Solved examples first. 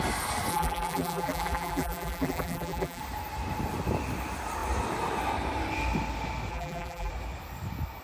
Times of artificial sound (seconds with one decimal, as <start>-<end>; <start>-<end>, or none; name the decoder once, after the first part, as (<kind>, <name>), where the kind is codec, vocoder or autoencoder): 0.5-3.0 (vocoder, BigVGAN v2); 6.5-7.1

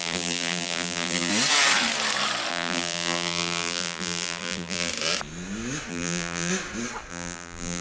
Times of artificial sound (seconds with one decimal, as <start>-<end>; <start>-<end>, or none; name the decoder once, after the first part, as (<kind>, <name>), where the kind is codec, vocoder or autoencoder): 0.0-1.3 (vocoder, BigVGAN v2); 2.5-4.9; 5.9-6.5; 7.1-7.8

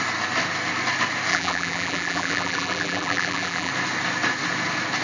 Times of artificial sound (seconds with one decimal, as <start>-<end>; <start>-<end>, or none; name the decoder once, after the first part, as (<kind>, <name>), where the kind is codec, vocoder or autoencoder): 1.3-3.7 (vocoder, BigVGAN v2)

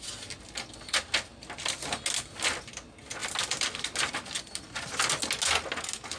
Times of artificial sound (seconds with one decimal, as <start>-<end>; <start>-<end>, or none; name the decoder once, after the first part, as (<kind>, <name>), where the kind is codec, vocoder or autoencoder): none

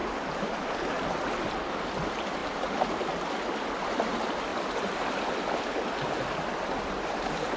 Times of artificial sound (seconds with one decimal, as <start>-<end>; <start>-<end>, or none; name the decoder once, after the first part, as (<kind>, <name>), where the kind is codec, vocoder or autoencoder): 0.0-0.6 (vocoder, BigVGAN v2)

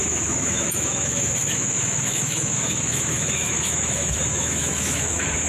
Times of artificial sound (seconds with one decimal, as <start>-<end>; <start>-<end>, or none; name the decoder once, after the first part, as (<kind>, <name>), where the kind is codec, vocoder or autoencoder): 0.0-5.5 (autoencoder, DAC-VAE)

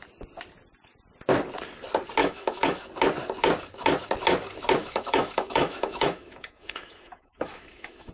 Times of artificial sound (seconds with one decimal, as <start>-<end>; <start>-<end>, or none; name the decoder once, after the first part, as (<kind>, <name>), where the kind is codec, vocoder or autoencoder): 2.2-2.9 (autoencoder, DAC-VAE); 4.8-8.1